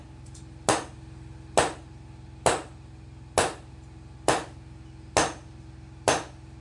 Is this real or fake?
real